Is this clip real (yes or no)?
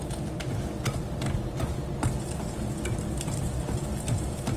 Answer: yes